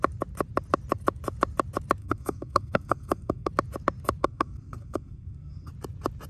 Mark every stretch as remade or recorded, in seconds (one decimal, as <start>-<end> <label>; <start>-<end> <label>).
0.0-2.0 recorded; 2.0-3.5 remade; 3.5-4.2 recorded; 4.2-5.7 remade; 5.7-6.3 recorded